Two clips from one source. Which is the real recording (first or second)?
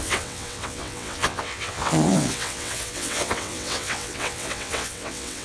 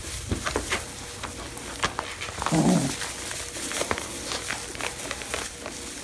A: second